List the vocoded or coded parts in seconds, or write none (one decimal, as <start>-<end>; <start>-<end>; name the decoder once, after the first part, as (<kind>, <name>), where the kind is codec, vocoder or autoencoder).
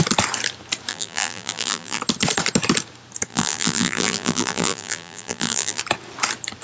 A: 0.9-2.0 (vocoder, BigVGAN v2); 3.3-5.8